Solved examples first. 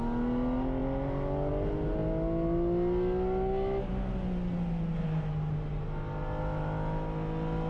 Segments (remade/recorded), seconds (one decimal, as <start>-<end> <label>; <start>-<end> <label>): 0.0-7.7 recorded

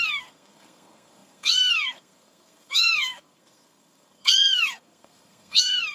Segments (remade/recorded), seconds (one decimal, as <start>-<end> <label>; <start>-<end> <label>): 0.0-5.9 remade

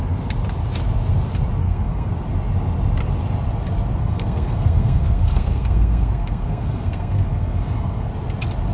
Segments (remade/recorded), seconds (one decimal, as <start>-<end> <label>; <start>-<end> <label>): 0.0-1.6 recorded; 1.6-2.1 remade; 2.1-4.0 recorded; 4.0-8.1 remade; 8.1-8.7 recorded